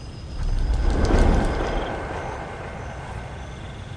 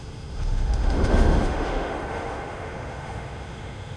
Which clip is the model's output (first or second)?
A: second